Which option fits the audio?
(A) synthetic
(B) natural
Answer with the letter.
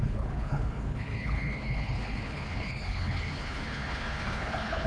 A